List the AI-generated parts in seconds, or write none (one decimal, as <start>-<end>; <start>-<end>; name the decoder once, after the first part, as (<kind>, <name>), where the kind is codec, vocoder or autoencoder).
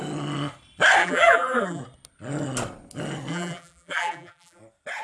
1.0-1.8 (vocoder, BigVGAN v2); 3.3-4.6